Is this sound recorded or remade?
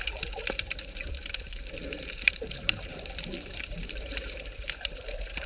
remade